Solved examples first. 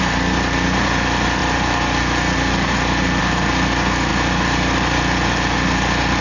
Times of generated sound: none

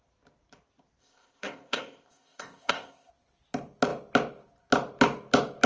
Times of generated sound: 1.0-3.1

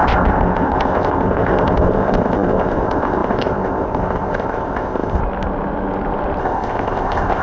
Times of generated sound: 0.0-5.2; 6.4-7.4

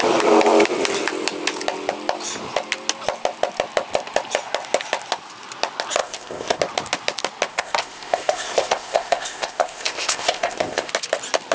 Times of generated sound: 6.0-6.6; 7.5-10.9

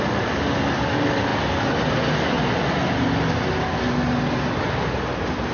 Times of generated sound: none

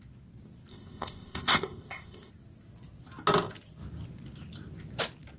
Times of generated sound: 0.7-2.3